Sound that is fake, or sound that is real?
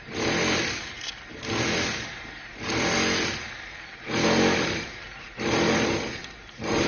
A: real